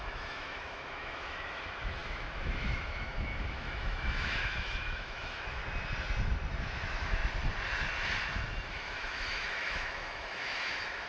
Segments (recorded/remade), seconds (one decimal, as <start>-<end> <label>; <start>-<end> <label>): 0.0-5.6 remade; 5.6-6.6 recorded; 6.6-7.2 remade; 7.2-8.7 recorded; 8.7-11.1 remade